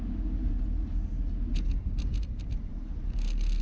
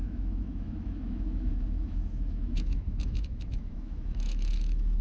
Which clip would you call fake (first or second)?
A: second